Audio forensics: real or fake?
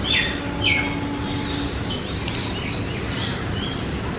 real